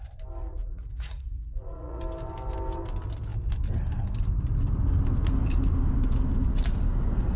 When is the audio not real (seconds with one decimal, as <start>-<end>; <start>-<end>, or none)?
0.4-2.0